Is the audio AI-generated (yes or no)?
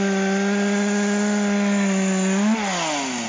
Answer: no